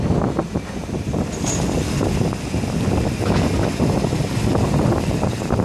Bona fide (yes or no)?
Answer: yes